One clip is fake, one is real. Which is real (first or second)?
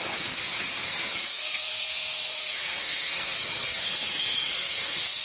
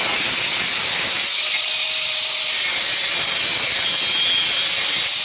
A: second